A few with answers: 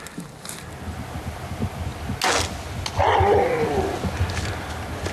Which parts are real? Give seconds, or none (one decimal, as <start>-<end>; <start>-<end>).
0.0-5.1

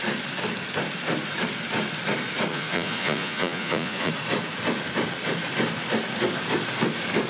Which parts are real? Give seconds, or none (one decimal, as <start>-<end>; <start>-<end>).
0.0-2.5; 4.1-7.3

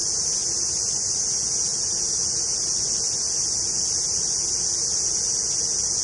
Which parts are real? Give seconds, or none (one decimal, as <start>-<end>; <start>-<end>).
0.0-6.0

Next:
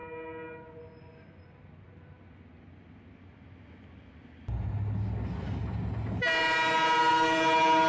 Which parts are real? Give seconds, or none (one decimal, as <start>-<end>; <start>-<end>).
0.0-7.9

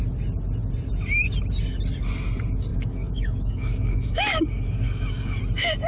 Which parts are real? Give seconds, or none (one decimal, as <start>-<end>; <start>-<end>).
0.0-2.7; 5.4-5.9

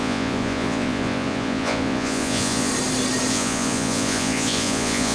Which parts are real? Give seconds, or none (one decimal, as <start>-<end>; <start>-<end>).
2.7-3.3

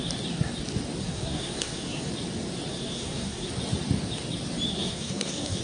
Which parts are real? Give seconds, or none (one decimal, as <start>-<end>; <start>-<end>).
0.0-1.0; 2.1-2.7; 3.5-4.7